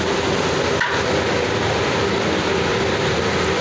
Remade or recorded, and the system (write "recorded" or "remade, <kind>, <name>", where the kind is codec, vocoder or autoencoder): recorded